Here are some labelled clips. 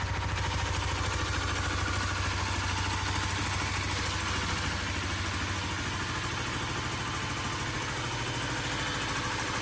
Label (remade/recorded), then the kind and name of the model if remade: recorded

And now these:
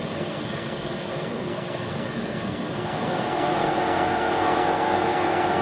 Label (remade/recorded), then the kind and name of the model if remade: remade, codec, SNAC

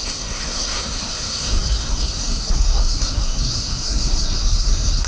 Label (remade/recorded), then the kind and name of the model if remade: remade, codec, SNAC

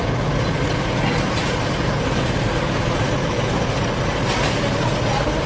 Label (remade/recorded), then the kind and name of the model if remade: recorded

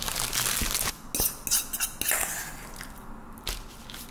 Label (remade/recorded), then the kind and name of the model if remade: recorded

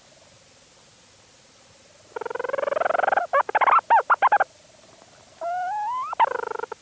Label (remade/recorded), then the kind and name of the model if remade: recorded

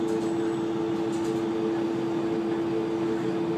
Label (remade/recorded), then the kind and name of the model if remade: recorded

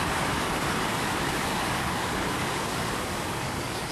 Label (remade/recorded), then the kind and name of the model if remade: remade, codec, DAC